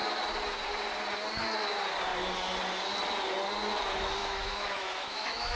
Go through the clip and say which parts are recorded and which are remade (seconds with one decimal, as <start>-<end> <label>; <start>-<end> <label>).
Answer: 0.0-4.2 recorded; 4.2-5.6 remade